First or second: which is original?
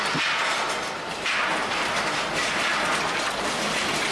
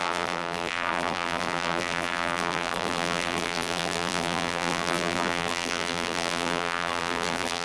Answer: first